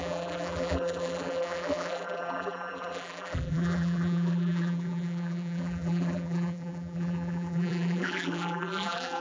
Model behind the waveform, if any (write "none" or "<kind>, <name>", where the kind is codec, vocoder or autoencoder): vocoder, BigVGAN v2